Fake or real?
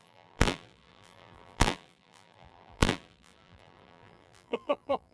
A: fake